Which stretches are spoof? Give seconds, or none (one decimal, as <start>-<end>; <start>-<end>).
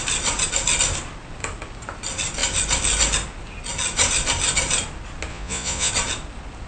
5.3-5.9